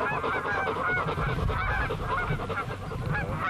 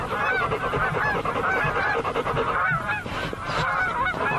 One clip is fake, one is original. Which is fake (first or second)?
second